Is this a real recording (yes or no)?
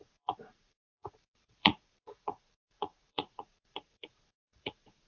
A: no